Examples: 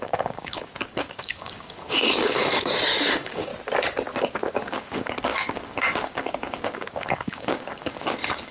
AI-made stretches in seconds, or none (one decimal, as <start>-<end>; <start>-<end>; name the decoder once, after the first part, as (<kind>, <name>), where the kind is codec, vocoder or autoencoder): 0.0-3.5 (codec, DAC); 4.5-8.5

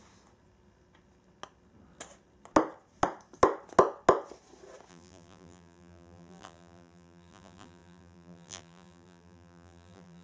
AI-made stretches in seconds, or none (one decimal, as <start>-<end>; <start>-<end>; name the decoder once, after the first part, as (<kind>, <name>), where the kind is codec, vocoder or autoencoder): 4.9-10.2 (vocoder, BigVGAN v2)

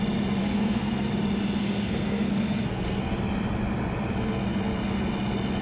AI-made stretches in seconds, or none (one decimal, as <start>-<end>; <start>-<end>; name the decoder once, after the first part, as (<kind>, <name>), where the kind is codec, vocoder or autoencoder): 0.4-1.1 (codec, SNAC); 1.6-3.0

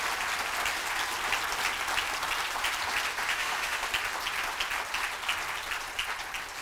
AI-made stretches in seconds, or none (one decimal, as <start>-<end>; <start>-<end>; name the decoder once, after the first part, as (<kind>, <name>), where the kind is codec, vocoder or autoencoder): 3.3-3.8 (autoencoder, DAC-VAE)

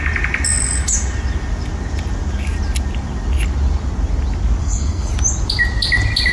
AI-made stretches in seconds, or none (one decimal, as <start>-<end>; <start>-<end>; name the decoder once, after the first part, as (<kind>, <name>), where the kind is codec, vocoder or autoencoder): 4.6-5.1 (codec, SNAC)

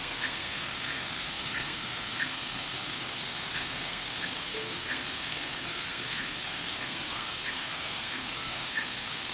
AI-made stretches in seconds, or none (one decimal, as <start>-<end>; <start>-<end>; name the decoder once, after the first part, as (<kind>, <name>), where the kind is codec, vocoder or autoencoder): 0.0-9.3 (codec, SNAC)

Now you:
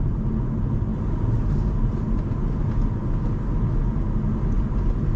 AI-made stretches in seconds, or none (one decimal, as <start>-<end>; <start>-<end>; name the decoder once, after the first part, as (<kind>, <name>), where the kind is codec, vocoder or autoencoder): none

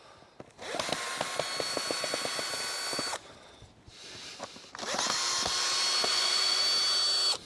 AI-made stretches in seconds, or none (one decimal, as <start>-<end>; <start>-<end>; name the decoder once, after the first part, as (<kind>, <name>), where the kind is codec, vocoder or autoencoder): 6.1-6.6 (vocoder, Vocos)